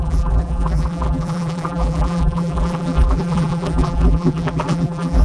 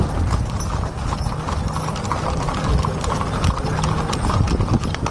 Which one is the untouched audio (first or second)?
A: second